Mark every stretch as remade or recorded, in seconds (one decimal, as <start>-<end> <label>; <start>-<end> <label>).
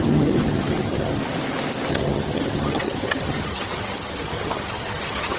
0.0-1.2 remade; 1.2-1.9 recorded; 1.9-5.4 remade